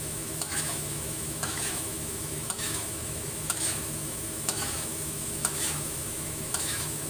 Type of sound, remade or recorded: remade